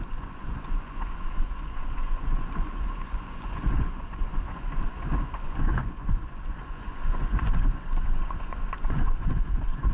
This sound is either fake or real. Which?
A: fake